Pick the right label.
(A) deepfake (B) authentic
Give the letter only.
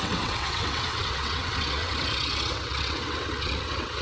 A